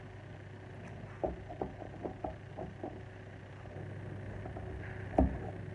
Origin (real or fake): real